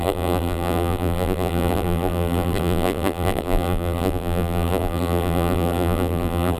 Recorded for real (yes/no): no